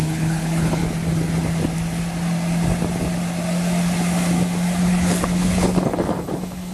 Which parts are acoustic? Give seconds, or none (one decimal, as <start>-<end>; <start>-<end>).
0.8-4.8